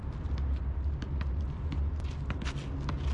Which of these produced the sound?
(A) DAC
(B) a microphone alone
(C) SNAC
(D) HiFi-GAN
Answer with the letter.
B